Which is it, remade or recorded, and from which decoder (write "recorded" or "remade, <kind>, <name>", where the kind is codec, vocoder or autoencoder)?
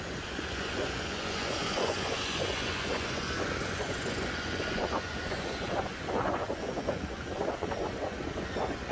remade, vocoder, Vocos